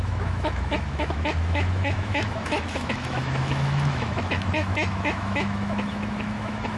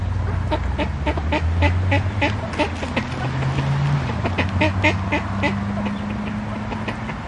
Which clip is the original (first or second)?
second